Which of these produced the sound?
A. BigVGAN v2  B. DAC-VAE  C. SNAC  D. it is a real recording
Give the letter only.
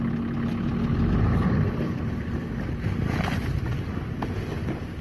D